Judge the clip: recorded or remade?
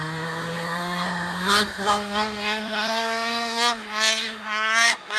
remade